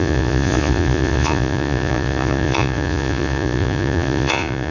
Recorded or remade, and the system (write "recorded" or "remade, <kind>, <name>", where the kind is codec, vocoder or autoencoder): remade, vocoder, Vocos